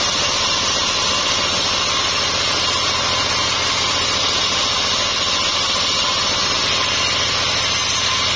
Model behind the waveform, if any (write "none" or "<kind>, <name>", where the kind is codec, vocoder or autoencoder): none